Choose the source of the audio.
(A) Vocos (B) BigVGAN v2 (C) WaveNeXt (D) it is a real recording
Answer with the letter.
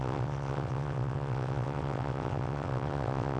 C